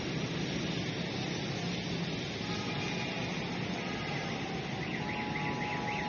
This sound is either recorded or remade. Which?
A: recorded